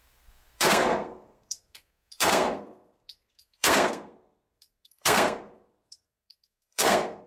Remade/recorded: remade